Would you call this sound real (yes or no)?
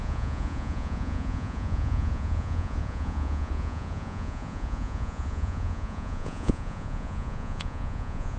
no